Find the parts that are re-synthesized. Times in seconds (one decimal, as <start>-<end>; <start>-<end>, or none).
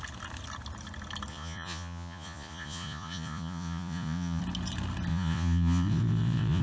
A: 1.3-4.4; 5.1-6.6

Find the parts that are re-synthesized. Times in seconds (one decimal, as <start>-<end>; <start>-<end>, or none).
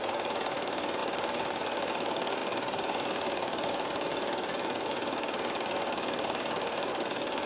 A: 0.0-7.5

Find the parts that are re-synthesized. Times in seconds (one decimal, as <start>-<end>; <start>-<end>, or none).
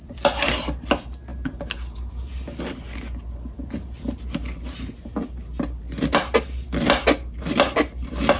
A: none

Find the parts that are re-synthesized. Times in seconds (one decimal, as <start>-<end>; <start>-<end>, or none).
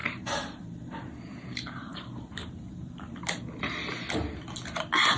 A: 0.0-3.1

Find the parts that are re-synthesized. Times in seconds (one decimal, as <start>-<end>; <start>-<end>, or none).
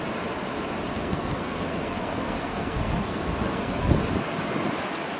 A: 0.9-4.0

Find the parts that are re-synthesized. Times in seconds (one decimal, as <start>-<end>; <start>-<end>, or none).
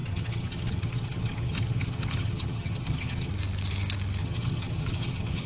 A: 0.0-3.3; 4.2-5.5